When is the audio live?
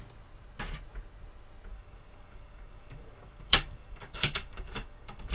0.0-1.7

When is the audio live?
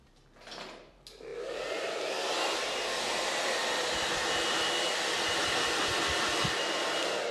0.0-7.3